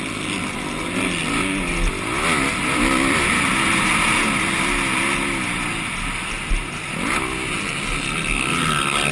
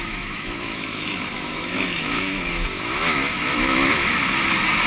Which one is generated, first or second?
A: second